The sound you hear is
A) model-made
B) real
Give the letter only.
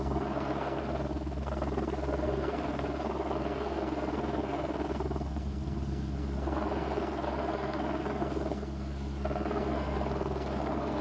A